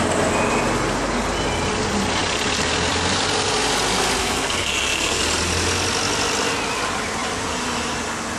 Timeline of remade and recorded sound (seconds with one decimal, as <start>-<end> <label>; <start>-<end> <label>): 0.0-4.2 recorded; 4.2-5.2 remade; 5.2-8.4 recorded